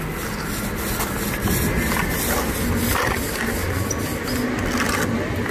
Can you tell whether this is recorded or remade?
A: recorded